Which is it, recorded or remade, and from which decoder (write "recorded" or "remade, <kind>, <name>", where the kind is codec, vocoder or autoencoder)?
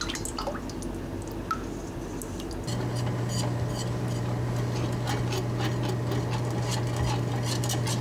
recorded